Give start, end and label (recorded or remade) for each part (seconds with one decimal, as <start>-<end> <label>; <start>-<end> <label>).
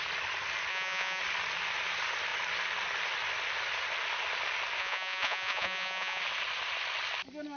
0.0-0.7 recorded; 0.7-1.2 remade; 1.2-4.8 recorded; 4.8-6.2 remade; 6.2-7.6 recorded